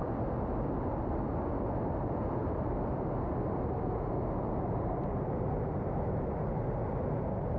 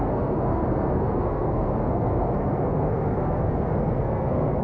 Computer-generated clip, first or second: second